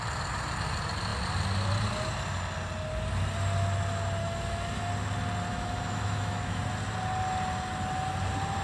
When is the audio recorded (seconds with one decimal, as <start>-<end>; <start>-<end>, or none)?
0.0-4.2; 4.9-5.5; 6.6-8.6

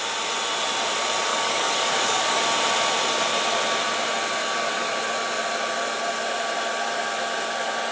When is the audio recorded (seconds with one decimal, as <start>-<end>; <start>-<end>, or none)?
0.0-1.3; 2.4-4.4; 4.9-7.9

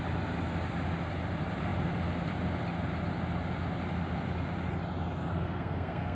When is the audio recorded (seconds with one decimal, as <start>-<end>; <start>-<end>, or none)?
0.0-5.3

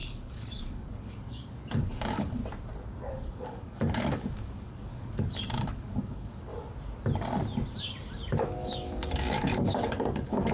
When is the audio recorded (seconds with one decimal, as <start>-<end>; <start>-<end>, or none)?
2.4-3.1; 6.5-8.4